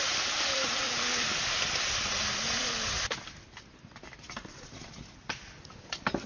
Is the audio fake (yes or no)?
yes